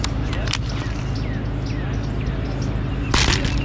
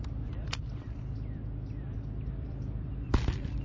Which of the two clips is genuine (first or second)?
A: first